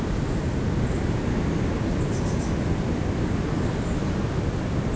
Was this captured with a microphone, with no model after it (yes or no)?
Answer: yes